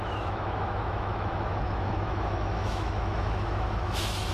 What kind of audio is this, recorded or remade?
remade